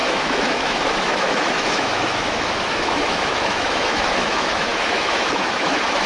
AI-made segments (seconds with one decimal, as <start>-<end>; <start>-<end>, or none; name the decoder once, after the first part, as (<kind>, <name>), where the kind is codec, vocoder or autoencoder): 0.0-6.1 (autoencoder, DAC-VAE)